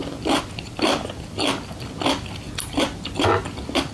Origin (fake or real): real